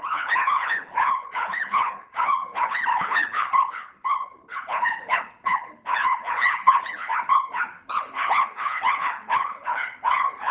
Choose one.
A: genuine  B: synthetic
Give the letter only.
B